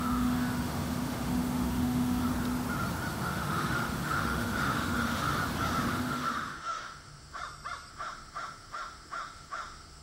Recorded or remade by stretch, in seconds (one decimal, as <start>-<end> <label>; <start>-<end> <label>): 0.0-2.3 remade; 2.3-3.1 recorded; 3.1-5.3 remade; 5.3-5.9 recorded; 5.9-7.4 remade; 7.4-7.9 recorded; 7.9-10.0 remade